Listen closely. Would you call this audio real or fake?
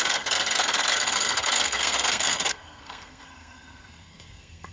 fake